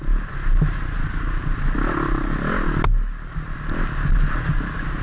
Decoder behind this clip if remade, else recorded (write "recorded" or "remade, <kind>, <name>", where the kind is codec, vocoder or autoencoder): recorded